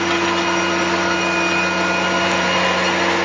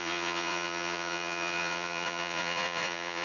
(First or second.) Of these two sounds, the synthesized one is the second